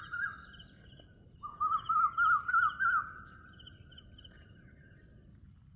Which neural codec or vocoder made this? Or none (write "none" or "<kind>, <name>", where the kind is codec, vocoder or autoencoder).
none